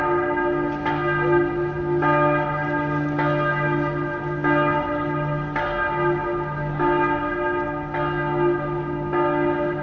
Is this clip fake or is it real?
real